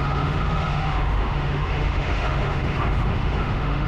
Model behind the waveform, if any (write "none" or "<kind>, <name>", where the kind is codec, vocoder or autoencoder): autoencoder, DAC-VAE